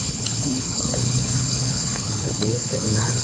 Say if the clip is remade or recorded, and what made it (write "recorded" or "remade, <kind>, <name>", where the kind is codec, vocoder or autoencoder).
remade, codec, HILCodec